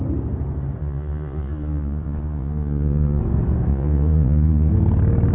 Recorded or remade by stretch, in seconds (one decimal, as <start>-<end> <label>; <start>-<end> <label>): 0.0-0.8 recorded; 0.8-3.2 remade; 3.2-3.7 recorded; 3.7-4.7 remade; 4.7-5.3 recorded